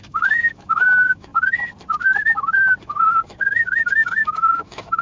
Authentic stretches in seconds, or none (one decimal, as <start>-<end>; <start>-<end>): 1.3-2.8